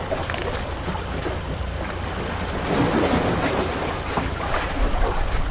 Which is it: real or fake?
real